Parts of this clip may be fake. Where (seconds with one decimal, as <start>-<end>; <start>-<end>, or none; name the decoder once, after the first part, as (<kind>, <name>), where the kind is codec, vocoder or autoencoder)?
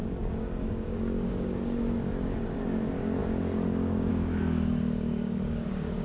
0.0-6.0 (codec, DAC)